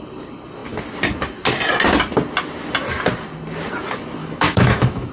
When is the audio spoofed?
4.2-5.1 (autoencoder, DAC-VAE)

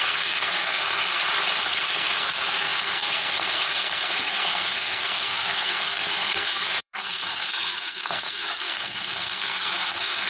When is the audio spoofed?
0.0-1.2 (codec, SNAC); 1.8-10.3

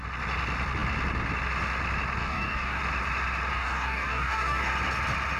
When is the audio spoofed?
2.2-2.8 (codec, DAC); 3.5-4.7

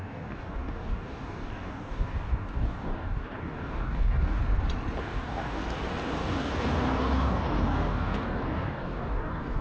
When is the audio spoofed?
0.0-4.4 (codec, DAC); 5.0-5.6; 6.2-9.6

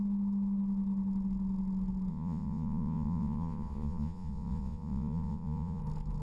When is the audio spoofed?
2.1-5.8 (vocoder, Vocos)

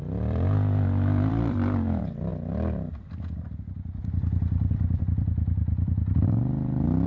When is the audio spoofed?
0.0-7.1 (vocoder, BigVGAN v2)

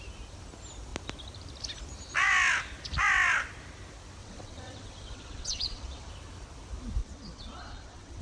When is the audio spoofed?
4.2-6.1 (vocoder, WaveNeXt); 7.0-8.2

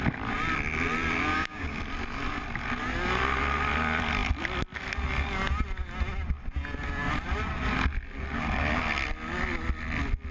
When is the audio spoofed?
1.3-1.8 (codec, DAC)